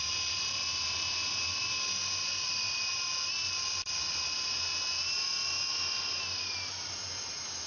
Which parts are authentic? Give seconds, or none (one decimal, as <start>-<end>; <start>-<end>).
0.0-7.7